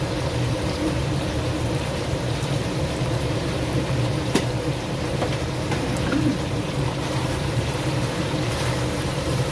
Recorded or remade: remade